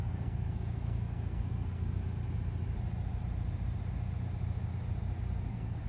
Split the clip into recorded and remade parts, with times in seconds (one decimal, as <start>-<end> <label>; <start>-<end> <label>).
0.0-2.0 remade; 2.0-5.5 recorded; 5.5-5.9 remade